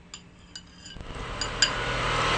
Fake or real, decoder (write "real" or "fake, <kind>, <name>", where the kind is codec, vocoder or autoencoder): real